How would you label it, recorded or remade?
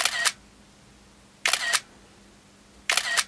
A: recorded